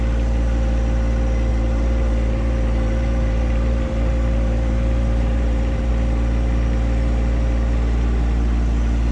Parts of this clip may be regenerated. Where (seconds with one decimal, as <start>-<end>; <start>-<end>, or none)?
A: 1.5-5.9